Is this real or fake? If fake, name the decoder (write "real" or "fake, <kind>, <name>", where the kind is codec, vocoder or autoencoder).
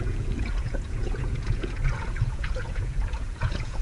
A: fake, vocoder, Vocos